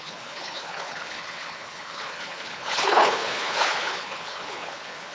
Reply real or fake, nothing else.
fake